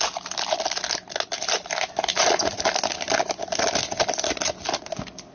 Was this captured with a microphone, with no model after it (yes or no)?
yes